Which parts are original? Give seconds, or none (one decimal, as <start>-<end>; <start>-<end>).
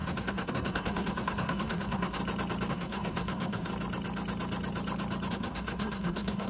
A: 2.2-2.7; 3.7-5.3